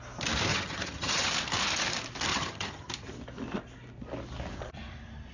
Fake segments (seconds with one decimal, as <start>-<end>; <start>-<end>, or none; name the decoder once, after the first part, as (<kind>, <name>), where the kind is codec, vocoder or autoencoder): 0.5-1.3 (vocoder, HiFi-GAN); 2.3-2.9